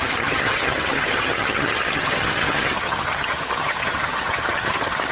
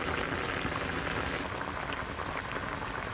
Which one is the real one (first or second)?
second